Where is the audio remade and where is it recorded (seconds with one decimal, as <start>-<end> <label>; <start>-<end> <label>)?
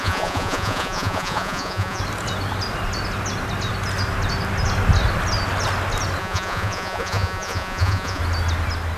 0.0-2.0 remade; 2.0-6.2 recorded; 6.2-8.2 remade; 8.2-9.0 recorded